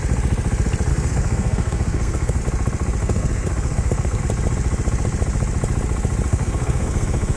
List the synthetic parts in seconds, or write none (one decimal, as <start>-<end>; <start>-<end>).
0.9-2.4; 3.0-4.2; 6.3-7.4